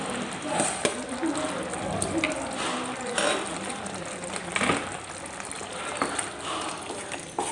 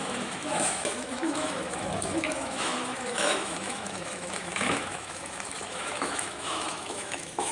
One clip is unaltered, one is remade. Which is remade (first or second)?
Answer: second